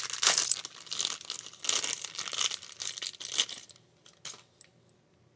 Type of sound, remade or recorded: recorded